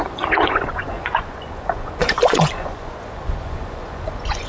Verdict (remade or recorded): remade